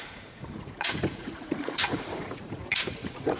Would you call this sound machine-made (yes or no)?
yes